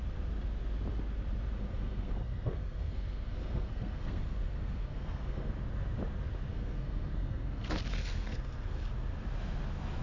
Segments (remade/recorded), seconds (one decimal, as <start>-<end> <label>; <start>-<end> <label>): 0.0-1.6 recorded; 1.6-5.5 remade; 5.5-6.5 recorded; 6.5-8.9 remade; 8.9-10.0 recorded

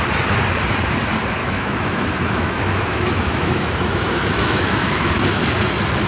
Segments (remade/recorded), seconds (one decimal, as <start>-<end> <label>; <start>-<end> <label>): 0.0-1.4 recorded; 1.4-5.1 remade; 5.1-6.1 recorded

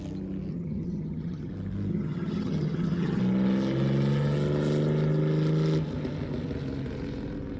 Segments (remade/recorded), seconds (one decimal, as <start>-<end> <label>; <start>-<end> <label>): 0.0-0.5 recorded; 0.5-1.5 remade; 1.5-1.9 recorded; 1.9-3.2 remade; 3.2-7.6 recorded

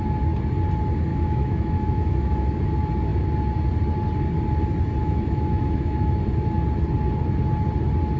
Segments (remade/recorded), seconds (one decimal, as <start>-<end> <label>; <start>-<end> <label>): 0.0-1.1 recorded; 1.1-2.6 remade; 2.6-5.0 recorded; 5.0-6.2 remade; 6.2-8.2 recorded

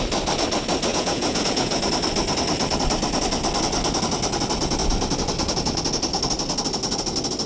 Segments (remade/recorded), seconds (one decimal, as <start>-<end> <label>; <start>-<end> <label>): 0.0-0.9 recorded; 0.9-1.8 remade; 1.8-7.5 recorded

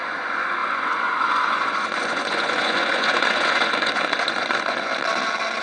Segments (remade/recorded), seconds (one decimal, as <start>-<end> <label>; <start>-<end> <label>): 0.0-4.9 remade; 4.9-5.6 recorded

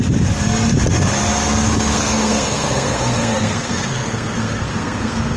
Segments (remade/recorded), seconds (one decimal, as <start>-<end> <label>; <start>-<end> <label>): 0.0-1.9 recorded; 1.9-5.4 remade